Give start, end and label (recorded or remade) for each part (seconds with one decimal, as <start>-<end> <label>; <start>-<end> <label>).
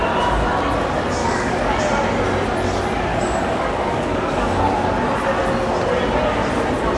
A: 0.0-1.2 recorded; 1.2-1.8 remade; 1.8-3.1 recorded; 3.1-4.6 remade; 4.6-7.0 recorded